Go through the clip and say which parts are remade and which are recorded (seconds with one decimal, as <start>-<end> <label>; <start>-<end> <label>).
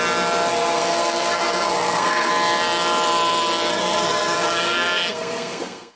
0.0-0.5 recorded; 0.5-2.3 remade; 2.3-3.7 recorded; 3.7-6.0 remade